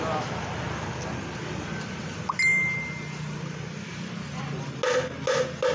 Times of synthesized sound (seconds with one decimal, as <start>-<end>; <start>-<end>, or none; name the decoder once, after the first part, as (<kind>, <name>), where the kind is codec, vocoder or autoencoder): none